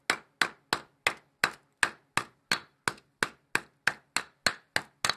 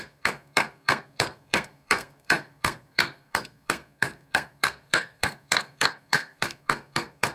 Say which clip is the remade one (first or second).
second